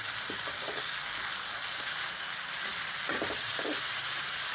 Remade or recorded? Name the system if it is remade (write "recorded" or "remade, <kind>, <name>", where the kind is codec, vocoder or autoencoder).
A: recorded